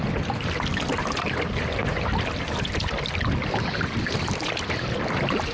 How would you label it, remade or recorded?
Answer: recorded